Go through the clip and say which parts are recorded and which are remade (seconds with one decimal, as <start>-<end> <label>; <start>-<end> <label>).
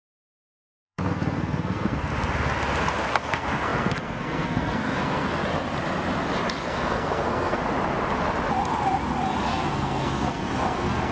0.0-2.1 remade; 2.1-2.9 recorded; 2.9-5.4 remade; 5.4-6.6 recorded; 6.6-7.6 remade; 7.6-9.4 recorded; 9.4-11.1 remade